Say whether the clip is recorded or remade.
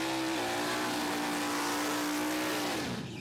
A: recorded